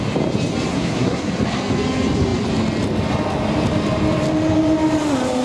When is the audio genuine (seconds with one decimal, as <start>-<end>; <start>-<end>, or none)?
0.0-0.7; 1.3-5.4